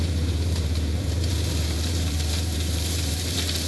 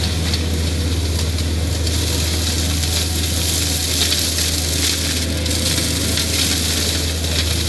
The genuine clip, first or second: second